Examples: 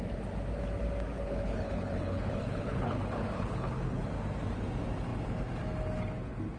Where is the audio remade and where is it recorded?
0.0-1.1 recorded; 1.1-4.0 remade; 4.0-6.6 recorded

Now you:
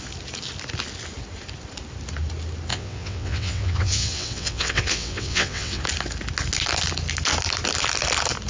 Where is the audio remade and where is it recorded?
0.0-2.7 recorded; 2.7-5.8 remade; 5.8-8.5 recorded

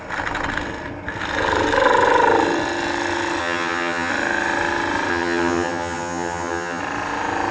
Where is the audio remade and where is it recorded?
0.0-3.4 recorded; 3.4-4.1 remade; 4.1-5.1 recorded; 5.1-6.8 remade; 6.8-7.5 recorded

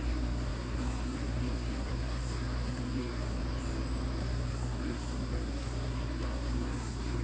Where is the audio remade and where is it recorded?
0.0-3.4 remade; 3.4-4.2 recorded; 4.2-7.2 remade